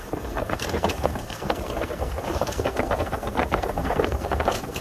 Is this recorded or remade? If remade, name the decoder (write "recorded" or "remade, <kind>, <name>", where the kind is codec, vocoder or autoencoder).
remade, codec, SNAC